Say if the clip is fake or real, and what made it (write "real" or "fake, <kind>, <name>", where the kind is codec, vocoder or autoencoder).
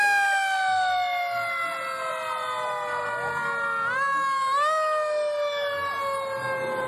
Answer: real